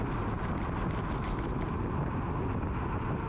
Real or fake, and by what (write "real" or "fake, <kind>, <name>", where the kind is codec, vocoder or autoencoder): real